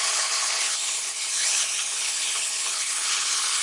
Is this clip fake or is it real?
fake